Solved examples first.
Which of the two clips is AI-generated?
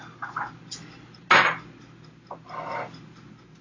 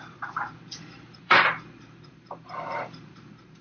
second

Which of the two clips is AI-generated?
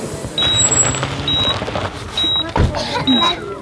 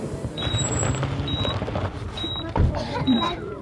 second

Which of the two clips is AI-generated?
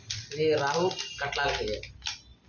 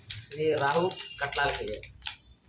second